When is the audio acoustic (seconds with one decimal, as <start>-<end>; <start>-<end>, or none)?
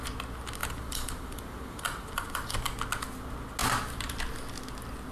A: 0.0-0.6; 2.5-5.1